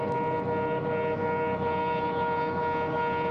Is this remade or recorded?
recorded